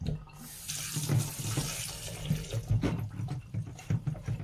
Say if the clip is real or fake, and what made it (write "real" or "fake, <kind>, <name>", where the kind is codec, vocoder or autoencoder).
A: real